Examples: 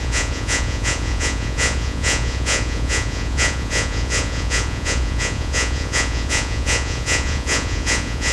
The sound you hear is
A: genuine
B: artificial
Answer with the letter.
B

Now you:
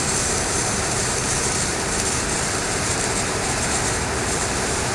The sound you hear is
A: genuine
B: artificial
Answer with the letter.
B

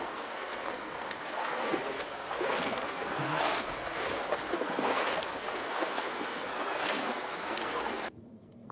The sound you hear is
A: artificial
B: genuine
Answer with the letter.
A